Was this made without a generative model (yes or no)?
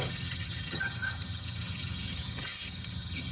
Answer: no